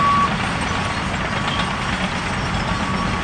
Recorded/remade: recorded